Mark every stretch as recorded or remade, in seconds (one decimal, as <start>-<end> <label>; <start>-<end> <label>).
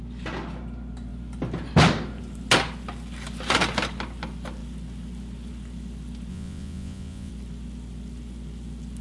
0.0-6.3 recorded; 6.3-7.3 remade; 7.3-9.0 recorded